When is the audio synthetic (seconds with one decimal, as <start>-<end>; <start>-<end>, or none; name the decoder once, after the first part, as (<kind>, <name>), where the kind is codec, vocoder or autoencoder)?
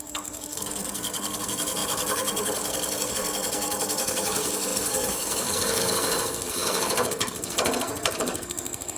0.0-9.0 (codec, SNAC)